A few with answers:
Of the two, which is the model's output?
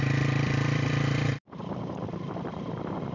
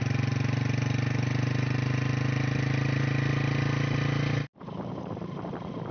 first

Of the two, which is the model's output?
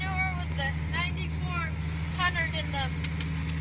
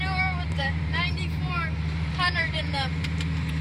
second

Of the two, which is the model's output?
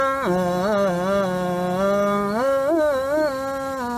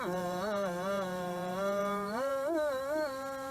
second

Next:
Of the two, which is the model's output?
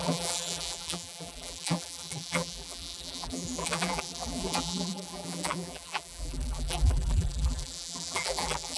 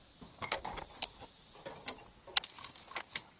first